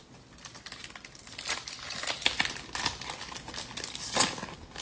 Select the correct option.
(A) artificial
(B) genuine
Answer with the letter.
B